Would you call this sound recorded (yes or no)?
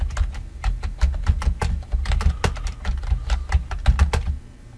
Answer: yes